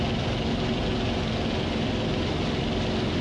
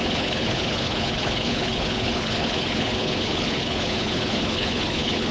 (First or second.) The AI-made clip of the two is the second